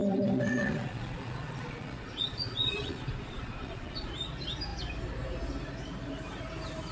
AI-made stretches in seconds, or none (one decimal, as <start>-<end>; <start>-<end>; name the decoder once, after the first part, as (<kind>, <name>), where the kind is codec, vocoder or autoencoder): 0.0-4.1 (vocoder, Vocos)